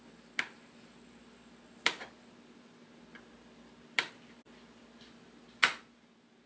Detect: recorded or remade recorded